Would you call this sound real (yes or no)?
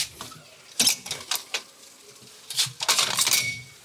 yes